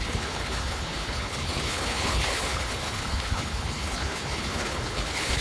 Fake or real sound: fake